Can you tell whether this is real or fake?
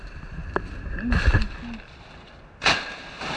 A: real